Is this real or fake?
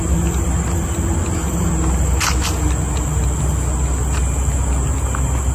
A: real